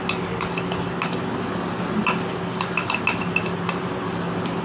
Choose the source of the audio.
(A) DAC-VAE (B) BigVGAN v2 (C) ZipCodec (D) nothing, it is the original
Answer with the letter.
D